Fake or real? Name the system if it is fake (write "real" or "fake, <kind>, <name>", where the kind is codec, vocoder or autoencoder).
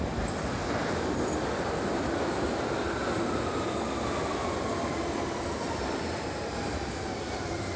real